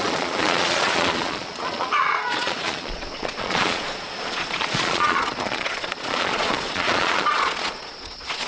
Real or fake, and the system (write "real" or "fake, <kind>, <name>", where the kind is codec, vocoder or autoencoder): fake, vocoder, Vocos